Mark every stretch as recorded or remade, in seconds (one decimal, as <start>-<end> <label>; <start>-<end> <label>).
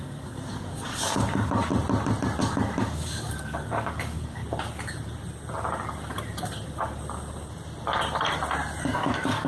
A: 0.0-1.7 remade; 1.7-2.4 recorded; 2.4-4.4 remade; 4.4-8.8 recorded; 8.8-9.5 remade